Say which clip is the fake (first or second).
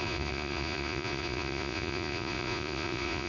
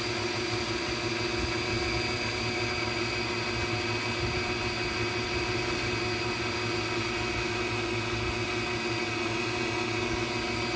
first